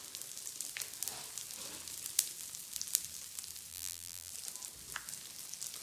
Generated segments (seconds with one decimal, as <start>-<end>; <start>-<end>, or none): 3.7-4.3

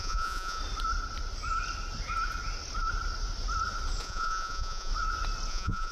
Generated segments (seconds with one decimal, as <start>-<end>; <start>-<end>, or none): 0.0-0.6; 4.0-4.9; 5.5-5.9

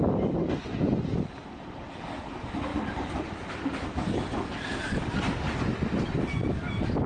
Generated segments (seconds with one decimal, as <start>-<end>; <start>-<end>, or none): none

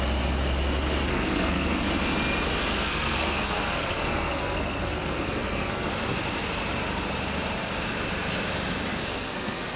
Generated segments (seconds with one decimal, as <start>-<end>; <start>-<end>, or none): 1.1-1.8; 2.6-5.9; 9.0-9.8